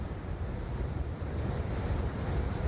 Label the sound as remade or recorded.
recorded